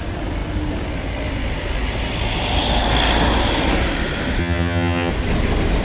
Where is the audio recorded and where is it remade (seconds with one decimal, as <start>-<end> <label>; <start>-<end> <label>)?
0.0-4.4 recorded; 4.4-5.1 remade; 5.1-5.8 recorded